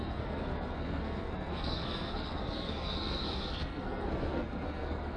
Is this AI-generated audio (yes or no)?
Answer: yes